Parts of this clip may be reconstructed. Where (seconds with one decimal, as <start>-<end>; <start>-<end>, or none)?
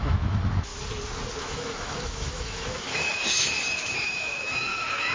0.0-0.7; 1.4-5.1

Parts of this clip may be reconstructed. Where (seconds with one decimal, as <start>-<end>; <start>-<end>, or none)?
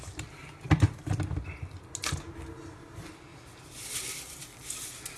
none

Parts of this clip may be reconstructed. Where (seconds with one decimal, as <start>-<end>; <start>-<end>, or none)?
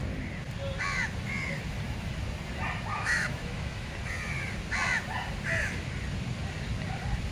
2.9-3.9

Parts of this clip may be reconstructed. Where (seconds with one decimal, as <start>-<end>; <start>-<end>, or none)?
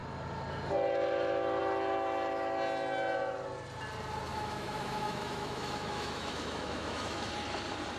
4.3-7.3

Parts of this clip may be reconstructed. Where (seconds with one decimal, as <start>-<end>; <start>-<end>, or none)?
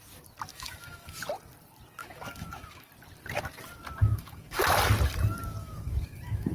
0.5-1.2; 2.0-2.9; 4.0-4.6; 5.6-6.5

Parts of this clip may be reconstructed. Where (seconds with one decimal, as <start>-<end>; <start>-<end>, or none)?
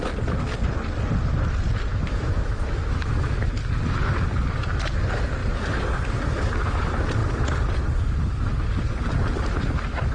1.9-3.5